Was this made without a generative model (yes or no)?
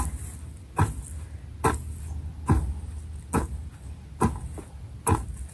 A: yes